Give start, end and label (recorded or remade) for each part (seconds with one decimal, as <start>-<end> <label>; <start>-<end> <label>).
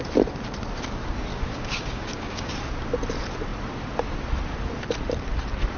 0.0-1.3 recorded; 1.3-2.5 remade; 2.5-5.8 recorded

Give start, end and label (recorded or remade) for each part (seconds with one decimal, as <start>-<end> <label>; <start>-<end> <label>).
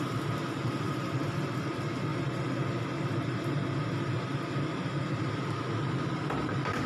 0.0-6.9 recorded